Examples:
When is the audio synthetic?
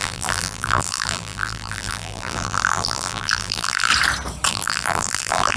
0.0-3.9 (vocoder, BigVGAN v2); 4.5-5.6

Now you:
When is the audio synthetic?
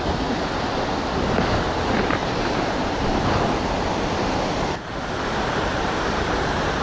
2.2-3.1 (vocoder, BigVGAN v2); 5.7-6.8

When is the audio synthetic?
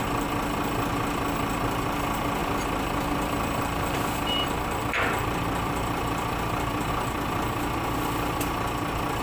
2.4-6.9 (vocoder, BigVGAN v2)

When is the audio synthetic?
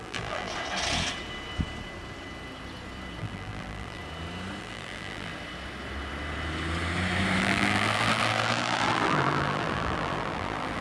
0.0-0.5 (vocoder, BigVGAN v2); 3.2-4.0; 4.6-5.3; 7.4-10.8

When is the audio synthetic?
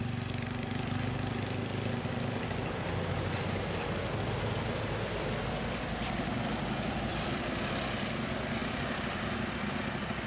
7.1-7.7 (vocoder, BigVGAN v2); 8.6-9.9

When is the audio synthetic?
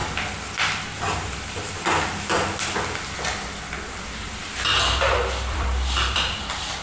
4.0-4.4 (vocoder, BigVGAN v2); 5.0-6.8